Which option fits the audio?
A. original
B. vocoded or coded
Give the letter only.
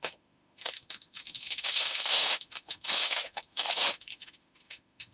B